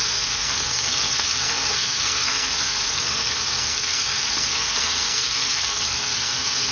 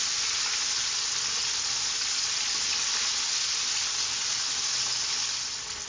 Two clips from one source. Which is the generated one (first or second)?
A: first